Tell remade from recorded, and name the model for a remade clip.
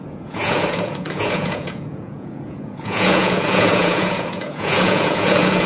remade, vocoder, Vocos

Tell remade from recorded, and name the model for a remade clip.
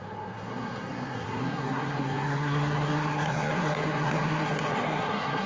remade, codec, SNAC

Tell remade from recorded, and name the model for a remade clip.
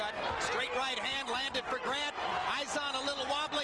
recorded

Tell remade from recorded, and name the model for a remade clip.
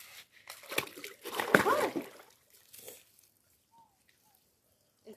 recorded